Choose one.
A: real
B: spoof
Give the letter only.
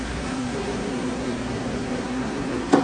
B